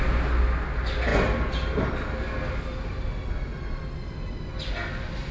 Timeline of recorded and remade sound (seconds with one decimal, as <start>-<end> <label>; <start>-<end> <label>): 0.0-5.3 recorded